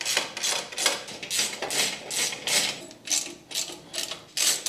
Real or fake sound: real